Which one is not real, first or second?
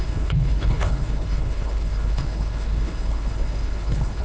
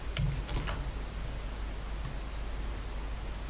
first